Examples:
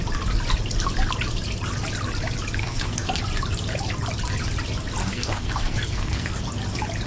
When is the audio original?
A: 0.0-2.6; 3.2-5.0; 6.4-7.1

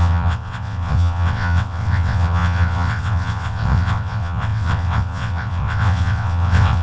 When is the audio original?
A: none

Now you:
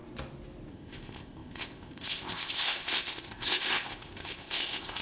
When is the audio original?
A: 0.0-0.7

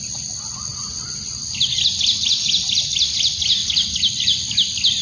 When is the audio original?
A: 0.0-5.0